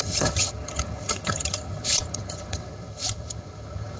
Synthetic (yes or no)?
yes